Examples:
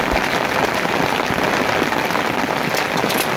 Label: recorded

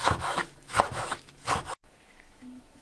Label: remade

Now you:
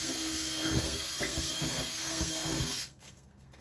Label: remade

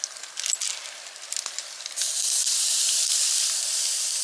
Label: recorded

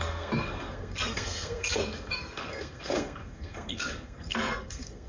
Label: remade